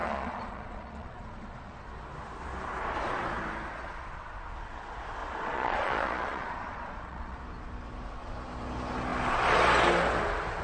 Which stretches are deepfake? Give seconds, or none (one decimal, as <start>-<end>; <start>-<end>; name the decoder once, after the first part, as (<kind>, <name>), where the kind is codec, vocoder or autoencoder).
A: 0.0-1.8 (vocoder, Vocos); 5.2-7.4